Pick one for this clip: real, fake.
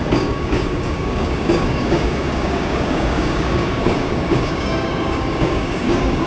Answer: fake